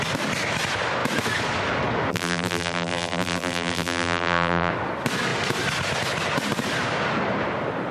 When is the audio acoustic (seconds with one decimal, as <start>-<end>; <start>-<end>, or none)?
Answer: 0.0-2.1; 4.7-7.9